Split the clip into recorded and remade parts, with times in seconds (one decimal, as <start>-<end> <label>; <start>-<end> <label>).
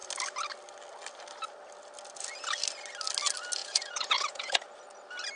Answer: 0.0-3.6 recorded; 3.6-4.6 remade; 4.6-5.4 recorded